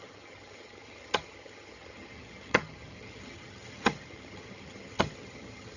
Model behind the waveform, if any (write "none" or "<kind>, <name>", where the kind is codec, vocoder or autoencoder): vocoder, HiFi-GAN